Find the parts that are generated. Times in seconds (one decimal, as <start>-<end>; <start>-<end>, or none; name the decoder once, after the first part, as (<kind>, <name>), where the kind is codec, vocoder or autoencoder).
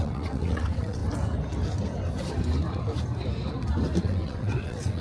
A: 0.0-1.0 (vocoder, WaveNeXt); 4.0-5.0